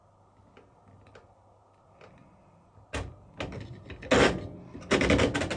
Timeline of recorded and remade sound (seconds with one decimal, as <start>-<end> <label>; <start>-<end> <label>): 0.0-5.6 recorded